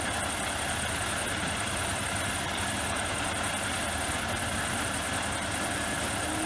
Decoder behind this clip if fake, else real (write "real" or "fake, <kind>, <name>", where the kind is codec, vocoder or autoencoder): real